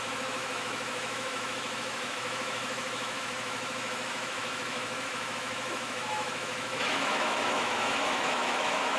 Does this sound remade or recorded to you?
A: remade